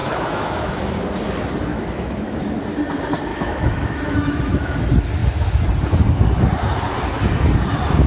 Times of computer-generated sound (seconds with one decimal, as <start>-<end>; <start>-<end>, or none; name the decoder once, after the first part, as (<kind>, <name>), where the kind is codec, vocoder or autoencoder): 0.0-0.8 (autoencoder, DAC-VAE); 1.7-2.6; 3.3-4.8